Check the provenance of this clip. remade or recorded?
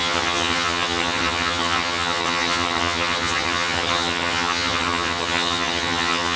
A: remade